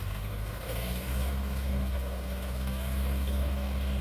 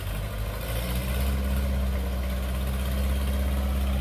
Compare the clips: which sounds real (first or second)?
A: second